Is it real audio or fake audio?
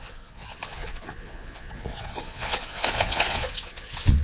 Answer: fake